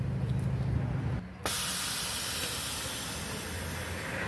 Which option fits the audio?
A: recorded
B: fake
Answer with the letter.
A